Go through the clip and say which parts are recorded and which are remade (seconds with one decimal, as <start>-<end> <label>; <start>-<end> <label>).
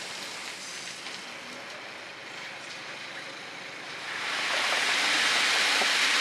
0.0-2.2 recorded; 2.2-6.2 remade